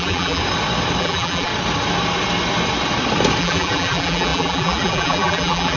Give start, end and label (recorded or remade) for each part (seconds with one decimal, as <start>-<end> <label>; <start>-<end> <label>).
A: 0.0-0.4 remade; 0.4-1.0 recorded; 1.0-1.5 remade; 1.5-3.4 recorded; 3.4-5.8 remade